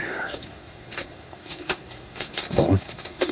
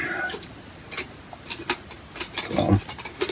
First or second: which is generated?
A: first